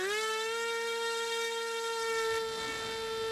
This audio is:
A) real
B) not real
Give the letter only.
A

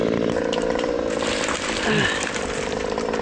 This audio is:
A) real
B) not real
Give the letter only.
A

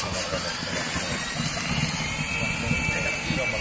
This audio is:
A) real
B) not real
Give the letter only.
A